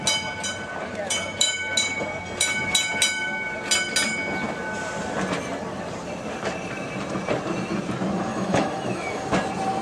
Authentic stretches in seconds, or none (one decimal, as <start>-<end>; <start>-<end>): 0.0-8.3; 9.2-9.8